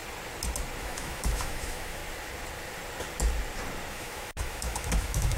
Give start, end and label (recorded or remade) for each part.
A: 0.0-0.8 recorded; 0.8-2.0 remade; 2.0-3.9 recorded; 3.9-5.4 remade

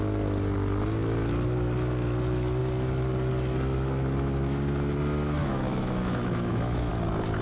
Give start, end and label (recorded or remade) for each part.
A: 0.0-5.4 recorded; 5.4-6.9 remade; 6.9-7.4 recorded

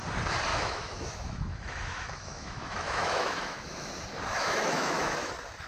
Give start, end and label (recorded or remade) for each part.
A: 0.0-0.5 recorded; 0.5-3.9 remade; 3.9-4.3 recorded; 4.3-5.3 remade; 5.3-5.7 recorded

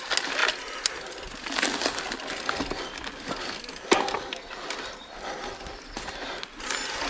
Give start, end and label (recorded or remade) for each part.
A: 0.0-7.1 recorded

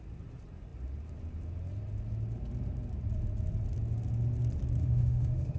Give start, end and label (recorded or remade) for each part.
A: 0.0-4.8 recorded; 4.8-5.6 remade

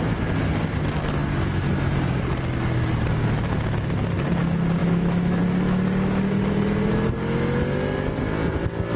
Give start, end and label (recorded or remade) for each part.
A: 0.0-4.8 recorded; 4.8-5.4 remade; 5.4-9.0 recorded